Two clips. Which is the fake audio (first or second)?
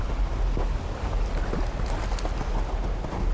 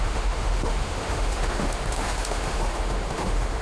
second